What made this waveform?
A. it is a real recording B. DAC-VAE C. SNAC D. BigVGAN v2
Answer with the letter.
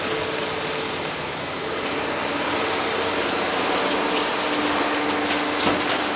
A